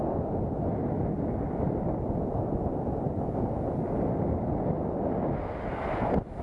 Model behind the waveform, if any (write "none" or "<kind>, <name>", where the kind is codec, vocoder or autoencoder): none